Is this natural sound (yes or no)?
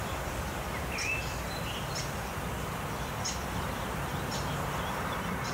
no